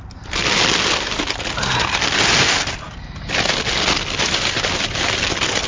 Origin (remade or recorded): recorded